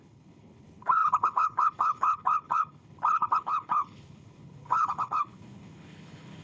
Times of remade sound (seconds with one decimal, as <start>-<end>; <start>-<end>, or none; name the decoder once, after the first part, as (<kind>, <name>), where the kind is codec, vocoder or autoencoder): 0.0-6.4 (codec, HILCodec)